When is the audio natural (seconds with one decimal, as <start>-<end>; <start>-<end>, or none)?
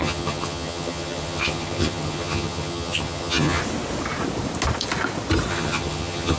3.6-5.5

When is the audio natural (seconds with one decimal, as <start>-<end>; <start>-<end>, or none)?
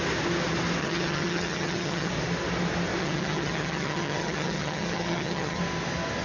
0.0-0.8; 2.1-3.0; 5.6-6.2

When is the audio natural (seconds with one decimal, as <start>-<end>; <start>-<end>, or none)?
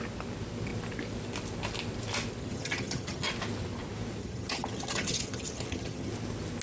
0.0-2.4; 3.3-4.2; 6.1-6.6